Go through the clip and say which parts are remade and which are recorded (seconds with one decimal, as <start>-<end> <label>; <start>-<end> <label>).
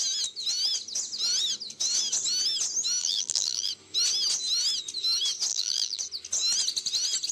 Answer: 0.0-3.0 recorded; 3.0-3.7 remade; 3.7-5.5 recorded; 5.5-6.0 remade; 6.0-7.3 recorded